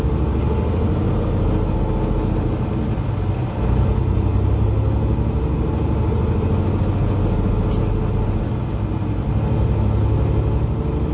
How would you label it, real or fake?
real